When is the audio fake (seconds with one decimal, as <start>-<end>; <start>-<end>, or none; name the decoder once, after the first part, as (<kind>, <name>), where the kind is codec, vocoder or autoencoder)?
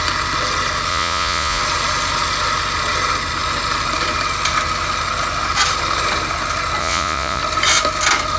0.9-1.6 (vocoder, Vocos); 6.8-7.4